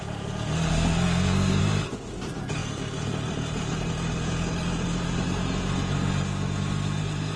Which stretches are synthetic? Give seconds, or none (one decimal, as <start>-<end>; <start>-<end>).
0.7-1.6